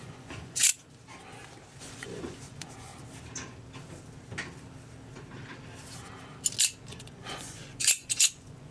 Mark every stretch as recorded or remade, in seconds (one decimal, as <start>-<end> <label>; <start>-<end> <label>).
0.0-0.7 remade; 0.7-1.8 recorded; 1.8-2.9 remade; 2.9-6.9 recorded; 6.9-8.7 remade